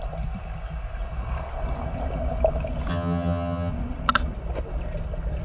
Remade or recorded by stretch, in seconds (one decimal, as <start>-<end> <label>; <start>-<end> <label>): 0.0-2.9 recorded; 2.9-3.7 remade; 3.7-5.4 recorded